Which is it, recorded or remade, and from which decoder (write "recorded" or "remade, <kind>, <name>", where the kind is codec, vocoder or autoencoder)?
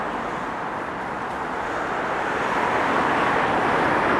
recorded